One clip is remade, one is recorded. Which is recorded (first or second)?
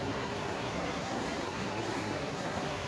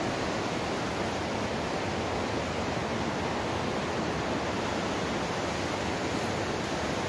second